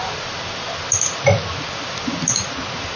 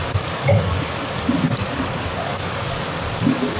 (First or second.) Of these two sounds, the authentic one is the first